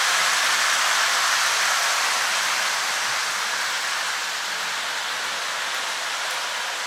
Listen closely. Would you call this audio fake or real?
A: real